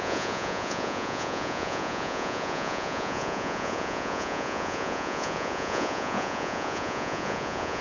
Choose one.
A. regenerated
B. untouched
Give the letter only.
A